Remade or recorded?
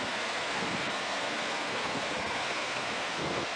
remade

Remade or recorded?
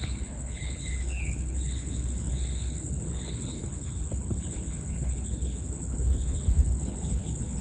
remade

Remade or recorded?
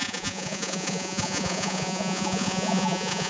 remade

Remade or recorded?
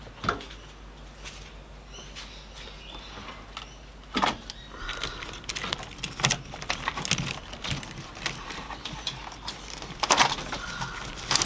recorded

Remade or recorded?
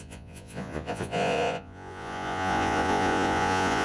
remade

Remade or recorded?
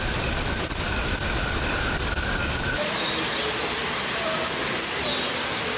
recorded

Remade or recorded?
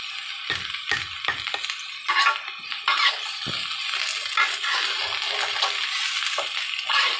recorded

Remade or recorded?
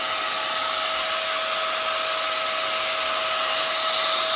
recorded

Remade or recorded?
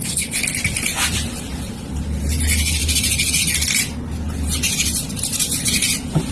recorded